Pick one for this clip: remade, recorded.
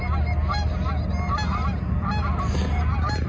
recorded